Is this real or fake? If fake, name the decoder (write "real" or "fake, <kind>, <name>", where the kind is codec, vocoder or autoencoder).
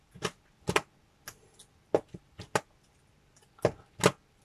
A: real